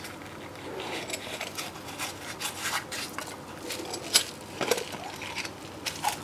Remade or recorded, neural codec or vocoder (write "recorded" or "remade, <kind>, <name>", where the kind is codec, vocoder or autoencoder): recorded